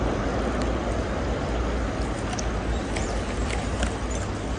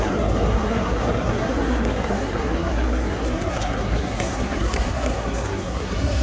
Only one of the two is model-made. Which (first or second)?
second